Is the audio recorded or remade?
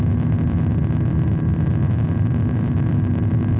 recorded